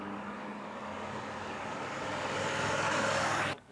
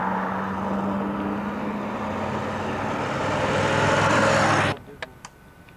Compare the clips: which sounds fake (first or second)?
first